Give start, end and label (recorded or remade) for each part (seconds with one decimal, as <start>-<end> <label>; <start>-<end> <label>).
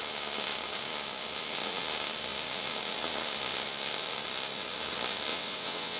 0.0-5.3 recorded; 5.3-6.0 remade